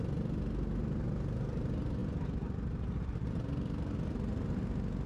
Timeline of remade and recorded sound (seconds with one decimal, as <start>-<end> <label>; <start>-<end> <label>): 0.0-5.1 recorded